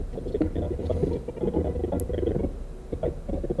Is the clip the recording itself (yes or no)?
yes